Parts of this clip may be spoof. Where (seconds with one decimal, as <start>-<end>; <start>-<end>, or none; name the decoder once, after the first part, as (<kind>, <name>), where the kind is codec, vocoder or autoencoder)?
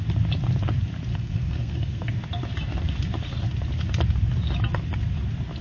1.1-2.1 (codec, SNAC)